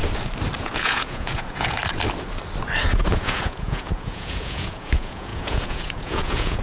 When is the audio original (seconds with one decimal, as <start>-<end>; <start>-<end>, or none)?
0.0-0.6; 1.8-2.9